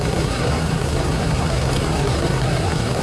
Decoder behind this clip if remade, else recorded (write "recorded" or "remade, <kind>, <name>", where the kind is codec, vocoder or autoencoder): remade, codec, SNAC